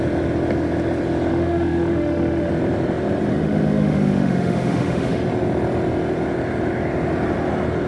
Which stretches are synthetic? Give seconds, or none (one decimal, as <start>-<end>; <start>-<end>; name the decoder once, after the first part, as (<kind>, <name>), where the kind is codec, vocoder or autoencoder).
1.3-2.5 (autoencoder, DAC-VAE); 3.3-5.2